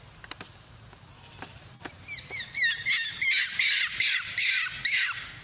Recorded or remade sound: recorded